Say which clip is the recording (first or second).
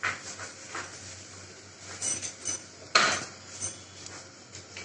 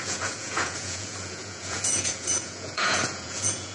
first